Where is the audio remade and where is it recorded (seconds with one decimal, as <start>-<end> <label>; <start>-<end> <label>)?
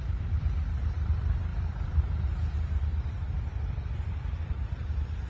0.0-5.3 remade